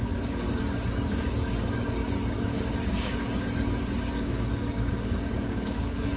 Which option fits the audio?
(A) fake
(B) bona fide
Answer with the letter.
A